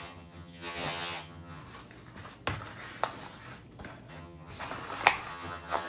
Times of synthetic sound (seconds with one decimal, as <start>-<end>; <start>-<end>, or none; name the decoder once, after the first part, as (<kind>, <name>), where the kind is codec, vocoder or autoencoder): 0.0-1.6 (vocoder, HiFi-GAN); 4.1-4.5; 5.3-5.9